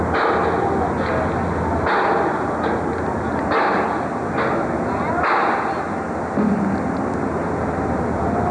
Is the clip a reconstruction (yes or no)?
no